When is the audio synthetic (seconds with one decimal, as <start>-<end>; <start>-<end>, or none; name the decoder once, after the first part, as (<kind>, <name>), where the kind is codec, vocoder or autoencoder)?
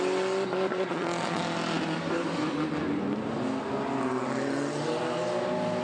0.7-1.4 (vocoder, Vocos)